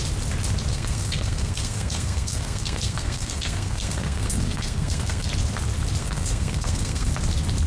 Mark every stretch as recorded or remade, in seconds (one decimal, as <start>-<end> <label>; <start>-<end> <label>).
0.0-0.7 recorded; 0.7-5.3 remade; 5.3-6.0 recorded; 6.0-7.1 remade; 7.1-7.7 recorded